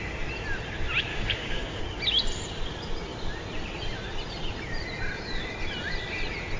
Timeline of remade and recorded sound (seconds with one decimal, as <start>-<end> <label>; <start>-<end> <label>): 0.0-1.1 recorded; 1.1-1.8 remade; 1.8-6.6 recorded